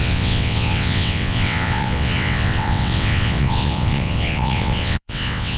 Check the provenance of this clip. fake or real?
fake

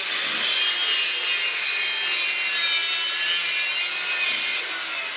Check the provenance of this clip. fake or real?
real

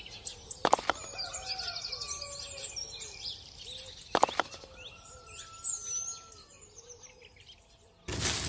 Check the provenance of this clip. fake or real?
real